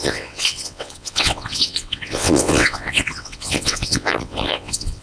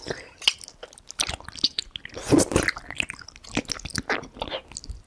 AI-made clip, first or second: first